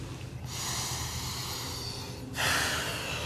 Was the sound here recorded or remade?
recorded